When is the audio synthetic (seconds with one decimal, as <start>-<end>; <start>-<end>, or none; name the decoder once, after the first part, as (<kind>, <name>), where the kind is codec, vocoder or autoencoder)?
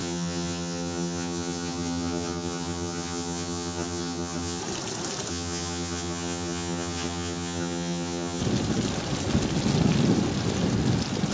0.0-4.6 (vocoder, HiFi-GAN); 5.3-8.4